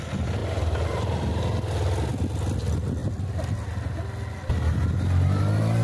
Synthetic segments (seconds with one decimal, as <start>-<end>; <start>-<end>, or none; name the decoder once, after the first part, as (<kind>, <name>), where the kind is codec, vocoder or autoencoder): none